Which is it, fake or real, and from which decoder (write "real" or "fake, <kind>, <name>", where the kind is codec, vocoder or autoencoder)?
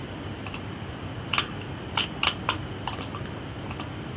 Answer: real